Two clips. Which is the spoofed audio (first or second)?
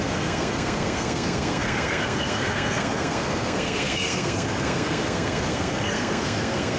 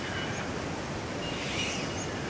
first